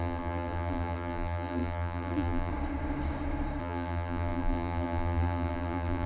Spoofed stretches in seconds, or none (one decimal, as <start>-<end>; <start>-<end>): 0.0-2.5; 3.6-6.1